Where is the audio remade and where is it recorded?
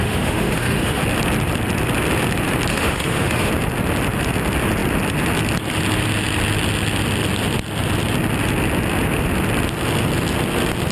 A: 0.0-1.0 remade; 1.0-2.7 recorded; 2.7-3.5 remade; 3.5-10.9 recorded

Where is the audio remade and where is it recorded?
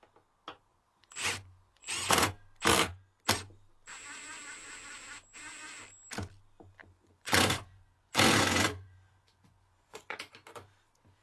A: 0.0-0.7 recorded; 0.7-2.3 remade; 2.3-6.8 recorded; 6.8-10.2 remade; 10.2-11.2 recorded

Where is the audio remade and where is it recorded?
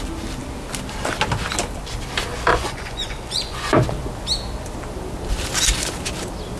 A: 0.0-2.5 recorded; 2.5-3.7 remade; 3.7-6.6 recorded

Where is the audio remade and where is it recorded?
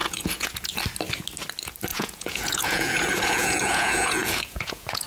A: 0.0-0.8 remade; 0.8-1.9 recorded; 1.9-5.1 remade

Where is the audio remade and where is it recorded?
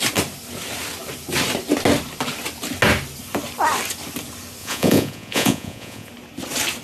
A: 0.0-4.6 recorded; 4.6-6.1 remade; 6.1-6.8 recorded